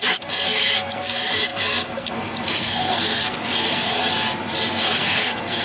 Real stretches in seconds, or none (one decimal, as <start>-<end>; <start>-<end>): 4.0-4.8